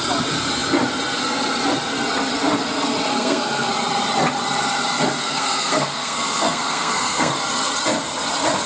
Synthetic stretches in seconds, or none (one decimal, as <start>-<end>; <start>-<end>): 3.1-3.7; 5.2-7.3